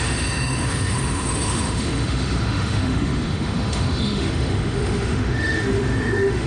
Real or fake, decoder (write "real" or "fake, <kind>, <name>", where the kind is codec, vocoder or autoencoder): fake, autoencoder, DAC-VAE